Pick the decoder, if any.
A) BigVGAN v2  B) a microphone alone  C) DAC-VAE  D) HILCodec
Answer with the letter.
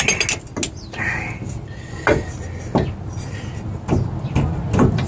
B